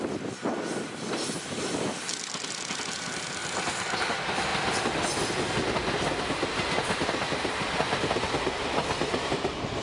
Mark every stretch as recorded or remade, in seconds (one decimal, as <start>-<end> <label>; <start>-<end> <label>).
0.0-9.8 recorded